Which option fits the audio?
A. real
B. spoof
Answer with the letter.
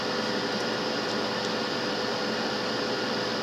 A